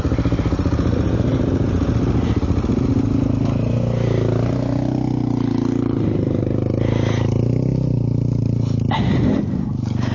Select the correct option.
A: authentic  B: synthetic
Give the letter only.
A